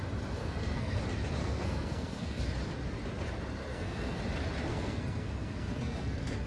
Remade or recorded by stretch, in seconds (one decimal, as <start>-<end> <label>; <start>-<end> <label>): 0.0-0.4 recorded; 0.4-1.0 remade; 1.0-1.4 recorded; 1.4-2.4 remade; 2.4-3.7 recorded; 3.7-4.2 remade; 4.2-4.7 recorded; 4.7-6.5 remade